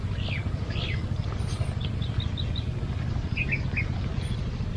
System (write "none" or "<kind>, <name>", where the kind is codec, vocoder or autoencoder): none